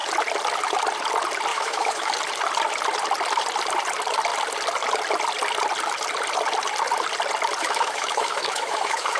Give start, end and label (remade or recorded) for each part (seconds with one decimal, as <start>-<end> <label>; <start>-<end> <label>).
0.0-1.5 recorded; 1.5-2.1 remade; 2.1-7.6 recorded; 7.6-9.2 remade